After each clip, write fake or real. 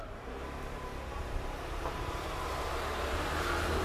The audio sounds fake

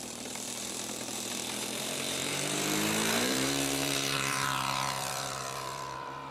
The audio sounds fake